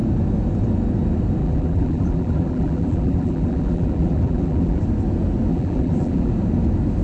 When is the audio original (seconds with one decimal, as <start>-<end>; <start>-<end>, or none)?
0.0-1.4; 4.8-5.5; 6.3-7.0